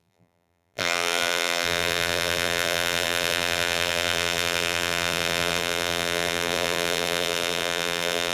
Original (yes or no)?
no